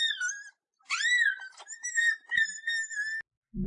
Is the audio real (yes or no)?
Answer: yes